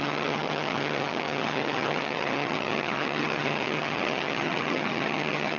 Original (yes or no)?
no